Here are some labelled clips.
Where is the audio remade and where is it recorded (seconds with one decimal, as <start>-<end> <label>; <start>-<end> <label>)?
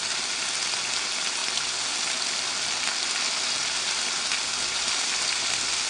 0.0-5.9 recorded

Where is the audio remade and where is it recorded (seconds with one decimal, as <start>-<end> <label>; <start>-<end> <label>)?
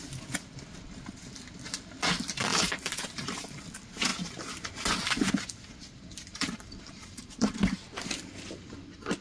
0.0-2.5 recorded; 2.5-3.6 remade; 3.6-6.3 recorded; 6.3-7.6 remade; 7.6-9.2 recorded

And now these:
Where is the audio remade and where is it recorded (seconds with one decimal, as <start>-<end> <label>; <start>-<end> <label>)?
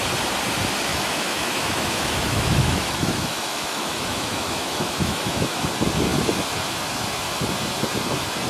0.0-0.9 recorded; 0.9-5.6 remade; 5.6-8.5 recorded